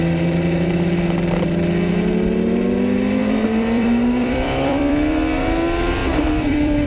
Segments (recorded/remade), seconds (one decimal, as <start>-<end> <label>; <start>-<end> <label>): 0.0-3.2 recorded; 3.2-5.4 remade; 5.4-6.0 recorded; 6.0-6.9 remade